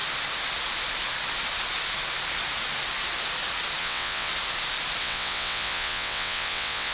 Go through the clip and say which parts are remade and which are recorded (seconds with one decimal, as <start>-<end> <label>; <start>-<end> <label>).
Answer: 0.0-3.8 recorded; 3.8-4.3 remade; 4.3-5.0 recorded; 5.0-6.9 remade

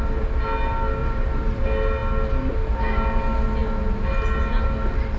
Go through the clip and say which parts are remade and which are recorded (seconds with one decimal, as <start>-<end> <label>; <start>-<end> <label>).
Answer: 0.0-1.0 recorded; 1.0-1.6 remade; 1.6-5.2 recorded

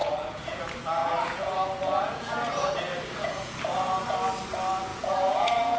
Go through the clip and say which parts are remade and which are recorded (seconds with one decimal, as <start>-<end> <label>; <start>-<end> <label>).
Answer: 0.0-0.6 remade; 0.6-1.0 recorded; 1.0-3.6 remade; 3.6-4.9 recorded; 4.9-5.8 remade

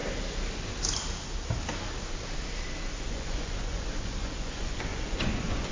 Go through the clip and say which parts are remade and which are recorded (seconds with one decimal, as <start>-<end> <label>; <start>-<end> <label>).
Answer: 0.0-2.9 recorded; 2.9-5.7 remade

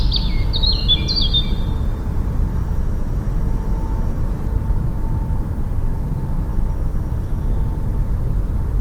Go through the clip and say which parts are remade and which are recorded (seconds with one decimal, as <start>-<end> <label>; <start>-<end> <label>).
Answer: 0.0-2.5 recorded; 2.5-4.2 remade; 4.2-6.5 recorded; 6.5-7.5 remade; 7.5-8.8 recorded

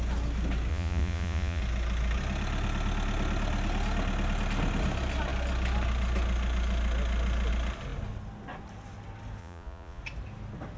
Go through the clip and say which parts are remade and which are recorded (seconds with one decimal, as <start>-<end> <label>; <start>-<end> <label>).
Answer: 0.0-0.7 recorded; 0.7-1.6 remade; 1.6-9.4 recorded; 9.4-10.0 remade; 10.0-10.8 recorded